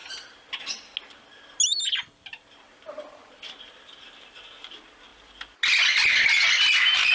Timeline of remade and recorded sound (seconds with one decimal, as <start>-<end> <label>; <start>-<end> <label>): 0.0-7.1 recorded